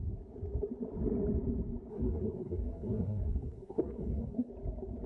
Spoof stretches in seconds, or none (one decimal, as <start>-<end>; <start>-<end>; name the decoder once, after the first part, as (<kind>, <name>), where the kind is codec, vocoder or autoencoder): 1.9-4.5 (codec, SNAC)